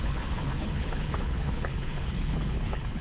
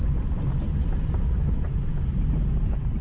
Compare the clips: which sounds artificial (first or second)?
first